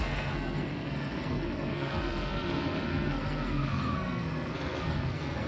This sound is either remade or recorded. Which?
remade